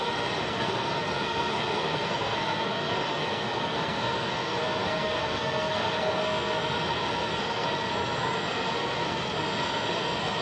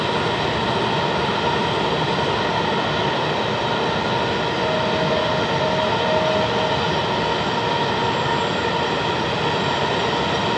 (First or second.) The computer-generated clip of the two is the first